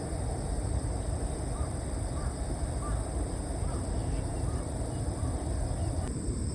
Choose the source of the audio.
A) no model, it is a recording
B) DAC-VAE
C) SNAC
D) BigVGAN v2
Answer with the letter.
D